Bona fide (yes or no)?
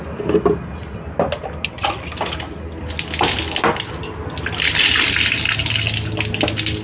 yes